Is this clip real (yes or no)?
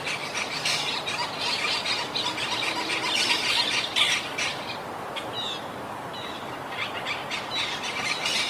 yes